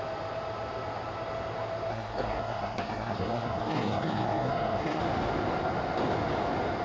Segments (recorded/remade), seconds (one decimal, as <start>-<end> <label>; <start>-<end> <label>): 0.0-1.9 recorded; 1.9-5.0 remade; 5.0-6.8 recorded